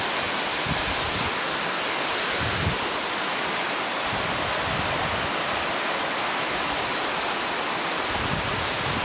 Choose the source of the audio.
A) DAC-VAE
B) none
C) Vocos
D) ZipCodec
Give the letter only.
B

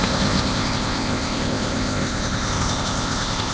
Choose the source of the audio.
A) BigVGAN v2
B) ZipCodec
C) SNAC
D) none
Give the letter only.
B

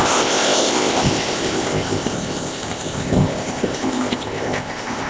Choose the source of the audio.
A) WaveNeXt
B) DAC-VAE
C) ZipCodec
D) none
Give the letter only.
C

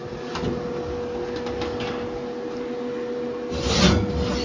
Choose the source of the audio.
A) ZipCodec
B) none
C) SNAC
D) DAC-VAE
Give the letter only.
B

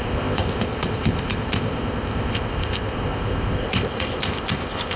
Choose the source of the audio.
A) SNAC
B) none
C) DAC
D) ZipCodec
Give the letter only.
D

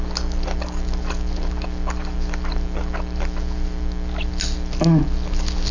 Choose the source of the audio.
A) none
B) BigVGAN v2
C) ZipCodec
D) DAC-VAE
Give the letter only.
A